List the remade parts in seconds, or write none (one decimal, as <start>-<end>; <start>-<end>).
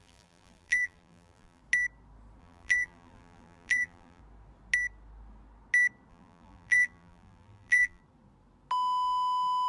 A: 0.0-1.6; 2.4-4.2; 6.1-8.0